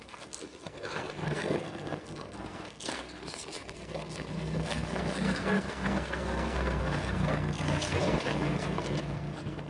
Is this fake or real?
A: fake